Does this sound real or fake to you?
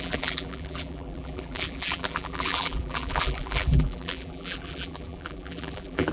fake